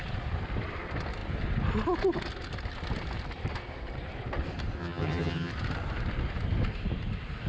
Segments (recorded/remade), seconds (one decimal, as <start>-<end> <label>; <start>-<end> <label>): 0.0-4.8 recorded; 4.8-5.5 remade; 5.5-7.5 recorded